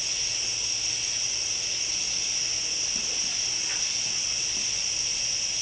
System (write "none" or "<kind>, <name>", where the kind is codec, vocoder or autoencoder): none